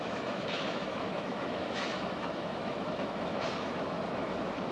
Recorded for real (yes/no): no